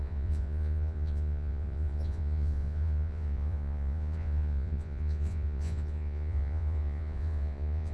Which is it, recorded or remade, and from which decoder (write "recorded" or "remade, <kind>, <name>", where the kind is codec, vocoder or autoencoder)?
remade, vocoder, Vocos